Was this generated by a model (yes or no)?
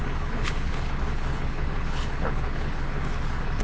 yes